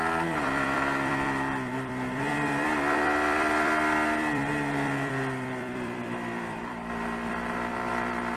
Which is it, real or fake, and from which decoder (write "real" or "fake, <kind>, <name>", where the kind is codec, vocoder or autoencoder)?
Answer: fake, vocoder, BigVGAN v2